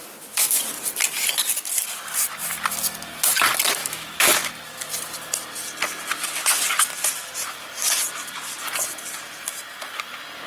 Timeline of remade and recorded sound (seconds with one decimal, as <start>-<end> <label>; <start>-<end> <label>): 0.0-0.6 remade; 0.6-3.8 recorded; 3.8-4.5 remade; 4.5-10.5 recorded